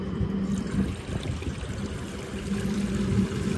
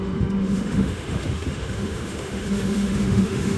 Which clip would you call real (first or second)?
first